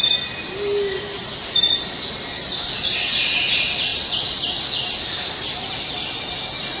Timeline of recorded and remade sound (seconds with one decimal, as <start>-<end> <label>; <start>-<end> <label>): 0.0-6.8 recorded